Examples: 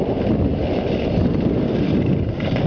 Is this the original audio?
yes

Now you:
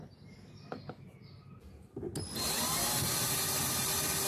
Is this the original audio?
yes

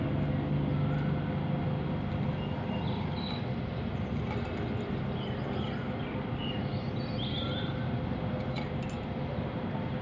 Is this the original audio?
yes